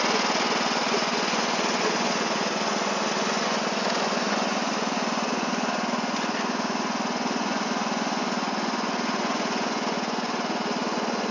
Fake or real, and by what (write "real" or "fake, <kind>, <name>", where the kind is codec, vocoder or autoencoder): fake, vocoder, Vocos